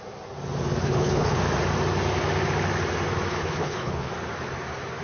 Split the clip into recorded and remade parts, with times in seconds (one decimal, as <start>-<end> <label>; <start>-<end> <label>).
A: 0.0-0.8 recorded; 0.8-1.4 remade; 1.4-3.3 recorded; 3.3-4.1 remade; 4.1-5.0 recorded